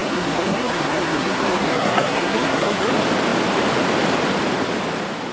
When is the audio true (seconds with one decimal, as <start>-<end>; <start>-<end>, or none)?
2.9-5.3